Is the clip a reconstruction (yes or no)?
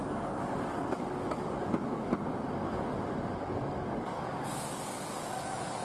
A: yes